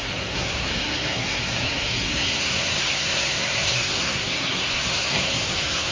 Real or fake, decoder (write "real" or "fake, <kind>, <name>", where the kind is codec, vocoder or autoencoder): fake, codec, SNAC